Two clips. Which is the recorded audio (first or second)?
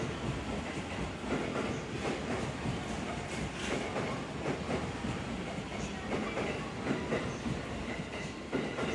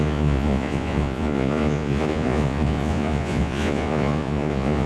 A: first